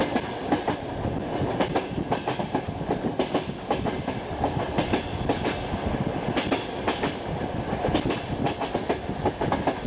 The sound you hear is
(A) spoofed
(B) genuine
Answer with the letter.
B